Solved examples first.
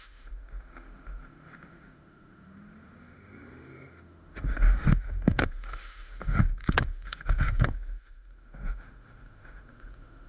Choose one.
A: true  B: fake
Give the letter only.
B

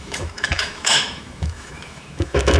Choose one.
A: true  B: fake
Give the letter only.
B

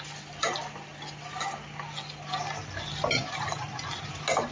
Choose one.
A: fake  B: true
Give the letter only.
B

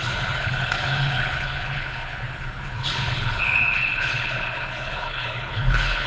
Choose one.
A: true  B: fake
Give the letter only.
B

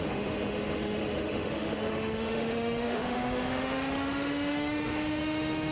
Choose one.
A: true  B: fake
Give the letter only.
B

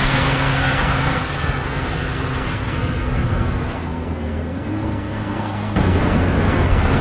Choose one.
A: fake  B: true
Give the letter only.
A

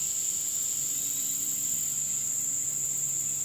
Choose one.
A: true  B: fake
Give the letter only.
A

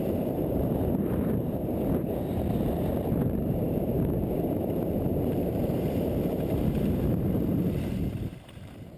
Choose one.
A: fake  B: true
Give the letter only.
A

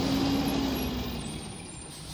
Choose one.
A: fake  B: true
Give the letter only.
B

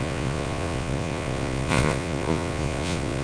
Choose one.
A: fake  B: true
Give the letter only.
A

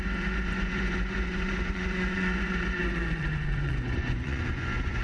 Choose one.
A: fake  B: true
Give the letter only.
A